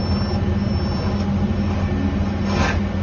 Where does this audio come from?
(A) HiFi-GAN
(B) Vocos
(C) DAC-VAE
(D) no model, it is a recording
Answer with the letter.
D